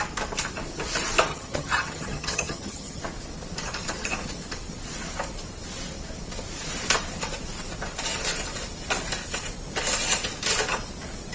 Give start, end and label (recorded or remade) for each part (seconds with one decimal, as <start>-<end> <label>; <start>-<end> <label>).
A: 0.0-1.3 recorded; 1.3-3.0 remade; 3.0-11.3 recorded